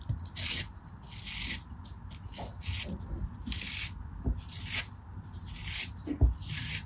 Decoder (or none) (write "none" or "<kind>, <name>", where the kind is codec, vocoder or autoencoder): none